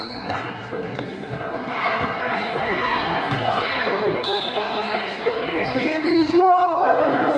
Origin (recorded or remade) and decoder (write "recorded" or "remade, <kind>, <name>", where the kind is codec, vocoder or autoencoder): remade, codec, SNAC